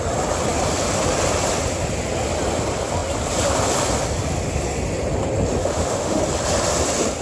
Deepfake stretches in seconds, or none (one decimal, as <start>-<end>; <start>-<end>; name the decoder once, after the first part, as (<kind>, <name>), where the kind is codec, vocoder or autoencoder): 5.6-6.2 (autoencoder, DAC-VAE)